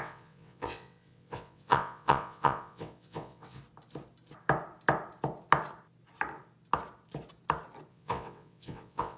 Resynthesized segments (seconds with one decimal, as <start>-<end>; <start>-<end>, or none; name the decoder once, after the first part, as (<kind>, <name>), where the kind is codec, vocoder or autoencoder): 0.0-3.6 (vocoder, WaveNeXt); 7.9-9.2